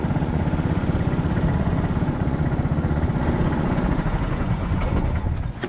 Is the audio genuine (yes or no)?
no